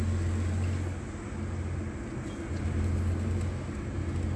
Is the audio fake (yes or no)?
no